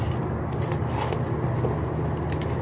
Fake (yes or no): no